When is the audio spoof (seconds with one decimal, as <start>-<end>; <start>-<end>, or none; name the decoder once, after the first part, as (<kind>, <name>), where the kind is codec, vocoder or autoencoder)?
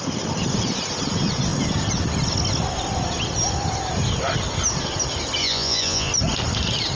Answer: 5.4-6.1 (vocoder, Vocos)